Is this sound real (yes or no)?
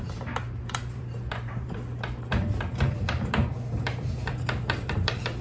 no